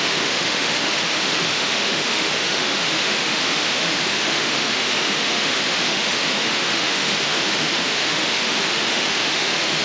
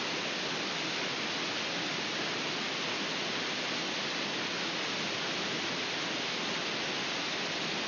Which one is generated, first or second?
first